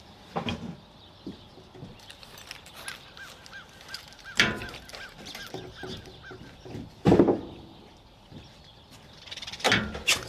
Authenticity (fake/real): real